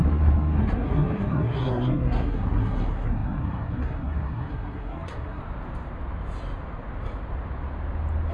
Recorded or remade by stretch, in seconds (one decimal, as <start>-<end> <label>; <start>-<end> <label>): 0.0-5.4 remade; 5.4-8.3 recorded